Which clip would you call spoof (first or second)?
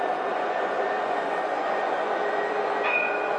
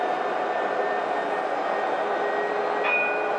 first